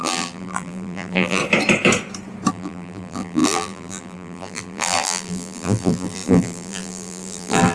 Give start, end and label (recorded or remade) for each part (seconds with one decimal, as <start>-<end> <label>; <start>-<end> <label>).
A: 0.0-1.4 remade; 1.4-2.5 recorded; 2.5-7.7 remade